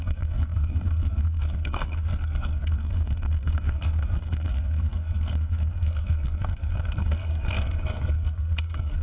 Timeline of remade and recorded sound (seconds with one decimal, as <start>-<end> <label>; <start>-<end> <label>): 0.0-9.0 remade